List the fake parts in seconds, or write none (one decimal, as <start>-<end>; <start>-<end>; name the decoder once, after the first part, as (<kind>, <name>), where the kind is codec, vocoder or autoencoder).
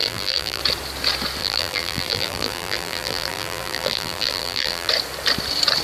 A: 0.0-0.6 (vocoder, BigVGAN v2); 1.4-4.9